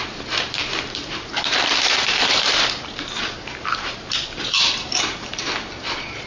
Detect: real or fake fake